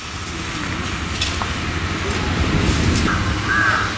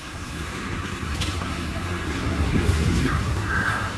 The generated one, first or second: second